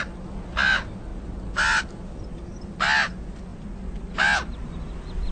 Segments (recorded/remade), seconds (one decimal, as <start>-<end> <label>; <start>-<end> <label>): 0.0-5.3 recorded